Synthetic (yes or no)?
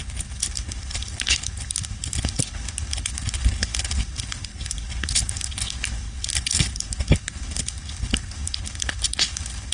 yes